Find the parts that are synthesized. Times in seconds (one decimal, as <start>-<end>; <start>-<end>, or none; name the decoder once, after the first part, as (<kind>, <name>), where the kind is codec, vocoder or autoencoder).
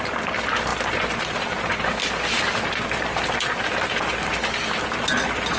none